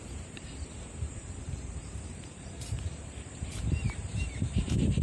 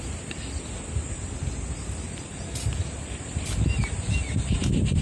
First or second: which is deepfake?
first